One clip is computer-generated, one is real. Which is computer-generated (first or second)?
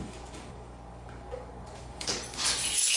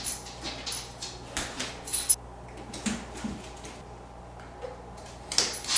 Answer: first